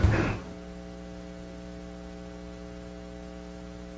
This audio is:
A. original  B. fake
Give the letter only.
A